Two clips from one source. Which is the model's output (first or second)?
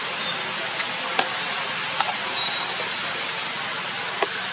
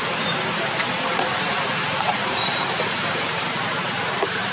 second